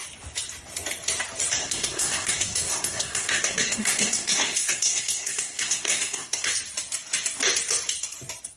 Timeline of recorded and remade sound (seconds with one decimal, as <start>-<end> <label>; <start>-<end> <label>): 0.0-1.6 recorded; 1.6-6.5 remade; 6.5-8.6 recorded